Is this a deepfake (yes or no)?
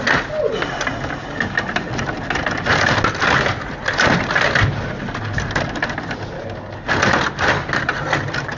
no